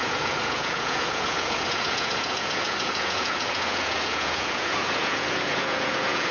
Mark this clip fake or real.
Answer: fake